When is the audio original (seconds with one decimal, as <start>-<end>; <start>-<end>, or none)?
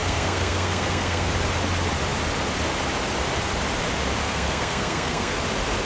1.3-4.2; 5.4-5.9